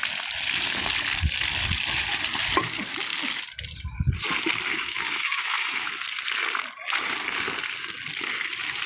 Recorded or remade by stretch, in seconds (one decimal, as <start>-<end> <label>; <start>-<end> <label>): 0.0-4.7 recorded; 4.7-5.9 remade; 5.9-8.9 recorded